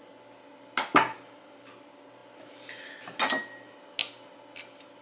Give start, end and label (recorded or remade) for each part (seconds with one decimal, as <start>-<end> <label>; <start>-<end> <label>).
0.0-5.0 recorded